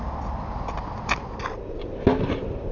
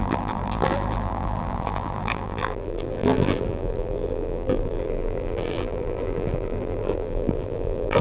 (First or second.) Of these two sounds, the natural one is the first